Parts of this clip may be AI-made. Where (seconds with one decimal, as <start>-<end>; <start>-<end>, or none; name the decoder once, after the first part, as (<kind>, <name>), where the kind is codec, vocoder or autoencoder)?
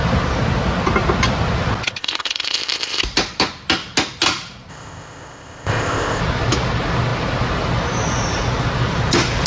2.0-3.0 (codec, ZipCodec); 4.7-6.2